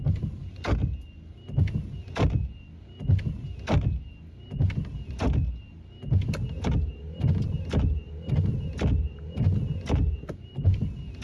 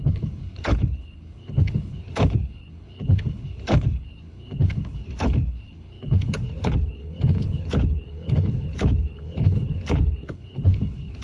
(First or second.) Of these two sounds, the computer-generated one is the second